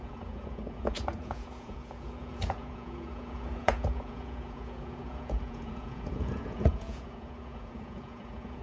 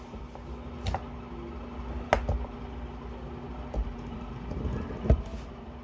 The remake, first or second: first